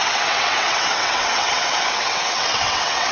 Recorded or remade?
remade